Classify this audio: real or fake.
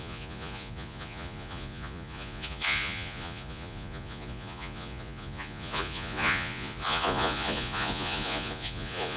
fake